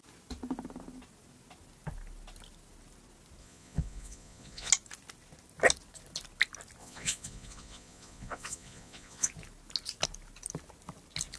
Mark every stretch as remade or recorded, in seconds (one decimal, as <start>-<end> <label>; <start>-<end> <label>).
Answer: 0.0-3.4 recorded; 3.4-4.7 remade; 4.7-6.8 recorded; 6.8-9.3 remade; 9.3-11.4 recorded